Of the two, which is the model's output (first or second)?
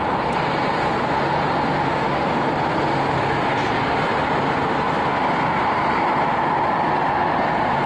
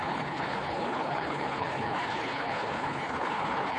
second